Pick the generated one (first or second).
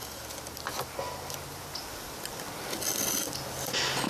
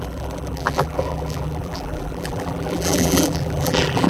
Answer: second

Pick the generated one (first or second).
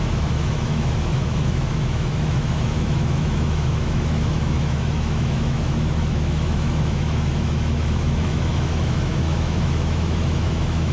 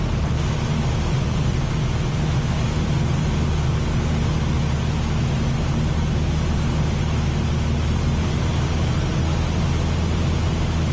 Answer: first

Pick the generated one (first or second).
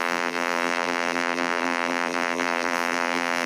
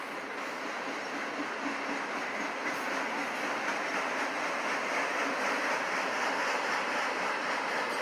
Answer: first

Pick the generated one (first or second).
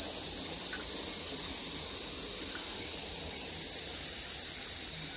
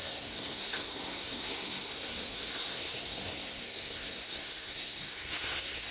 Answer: second